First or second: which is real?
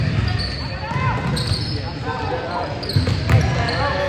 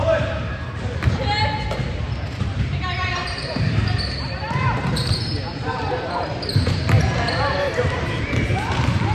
first